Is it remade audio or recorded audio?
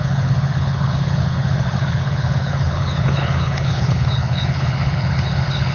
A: remade